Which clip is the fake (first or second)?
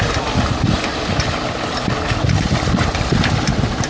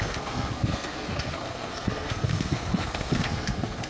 second